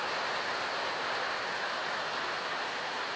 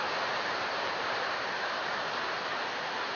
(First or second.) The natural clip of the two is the first